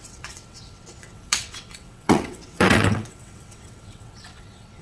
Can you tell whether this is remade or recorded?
remade